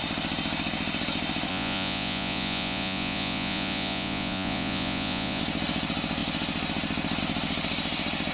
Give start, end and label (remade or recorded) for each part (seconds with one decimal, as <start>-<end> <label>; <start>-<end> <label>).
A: 0.0-1.5 recorded; 1.5-5.4 remade; 5.4-8.3 recorded